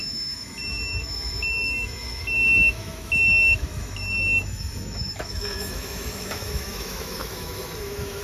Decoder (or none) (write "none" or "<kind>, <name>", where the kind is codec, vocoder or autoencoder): autoencoder, DAC-VAE